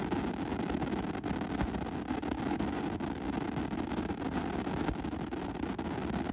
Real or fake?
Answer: real